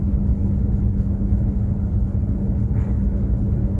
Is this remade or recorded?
remade